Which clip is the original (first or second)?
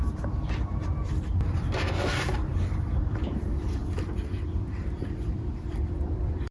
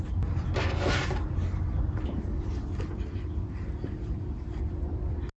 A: second